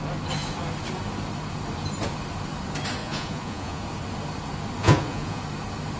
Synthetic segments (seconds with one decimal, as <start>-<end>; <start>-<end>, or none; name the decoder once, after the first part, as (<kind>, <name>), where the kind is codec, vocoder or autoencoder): 3.0-3.8 (vocoder, Vocos); 4.8-5.4